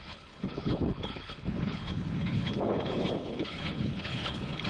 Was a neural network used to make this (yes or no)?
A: yes